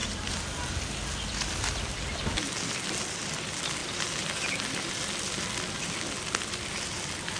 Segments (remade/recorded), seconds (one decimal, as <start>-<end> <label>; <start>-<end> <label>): 0.0-7.4 recorded